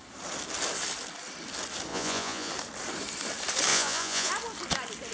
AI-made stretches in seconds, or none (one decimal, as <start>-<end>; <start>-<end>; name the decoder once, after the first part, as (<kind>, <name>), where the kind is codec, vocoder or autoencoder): 1.9-2.5 (vocoder, Vocos); 3.7-4.3